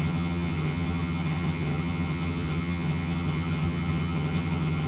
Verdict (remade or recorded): remade